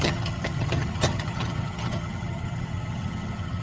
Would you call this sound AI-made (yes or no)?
yes